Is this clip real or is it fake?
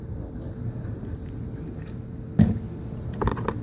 real